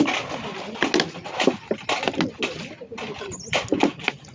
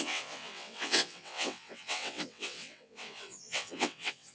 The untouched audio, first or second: first